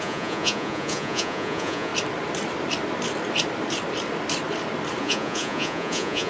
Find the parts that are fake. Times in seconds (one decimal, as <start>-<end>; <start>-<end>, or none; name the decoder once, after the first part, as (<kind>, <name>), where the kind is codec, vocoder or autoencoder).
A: 0.0-1.9 (vocoder, Vocos); 5.0-6.3